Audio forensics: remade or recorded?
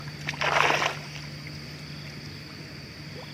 recorded